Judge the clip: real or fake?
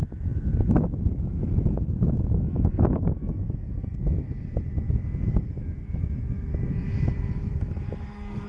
fake